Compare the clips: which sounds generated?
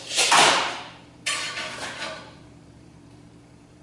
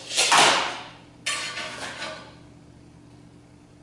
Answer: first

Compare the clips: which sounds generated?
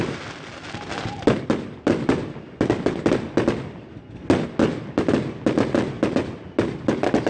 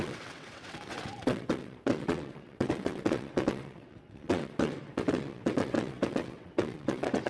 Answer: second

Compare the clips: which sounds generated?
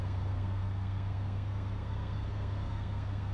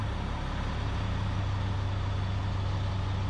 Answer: first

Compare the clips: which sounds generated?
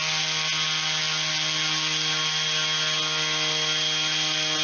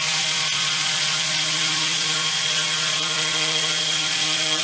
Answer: second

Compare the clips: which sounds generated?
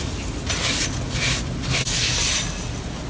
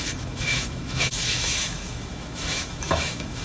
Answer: second